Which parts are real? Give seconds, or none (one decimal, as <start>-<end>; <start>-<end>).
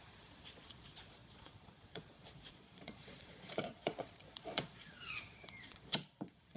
none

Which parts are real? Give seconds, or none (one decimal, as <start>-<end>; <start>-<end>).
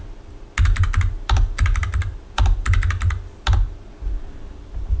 0.0-5.0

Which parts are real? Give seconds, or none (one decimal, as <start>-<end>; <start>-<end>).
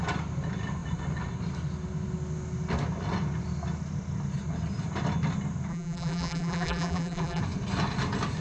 0.0-5.7; 7.4-8.4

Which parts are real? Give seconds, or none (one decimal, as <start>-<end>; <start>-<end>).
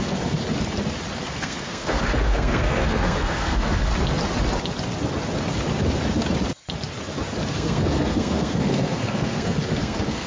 0.4-1.2; 3.9-7.5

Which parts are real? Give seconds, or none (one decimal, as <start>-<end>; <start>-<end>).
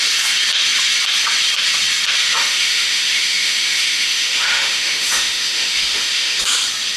0.0-2.2; 6.4-7.0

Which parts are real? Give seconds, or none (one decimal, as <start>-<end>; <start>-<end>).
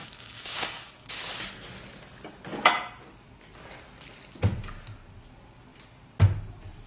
1.1-6.9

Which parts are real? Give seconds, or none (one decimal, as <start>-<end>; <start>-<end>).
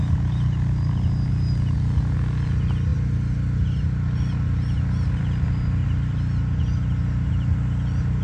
0.0-5.8; 6.4-8.2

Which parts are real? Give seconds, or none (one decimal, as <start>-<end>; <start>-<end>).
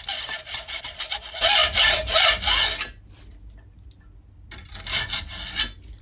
0.0-6.0